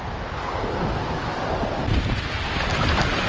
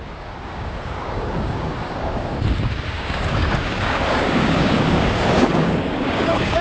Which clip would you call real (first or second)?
first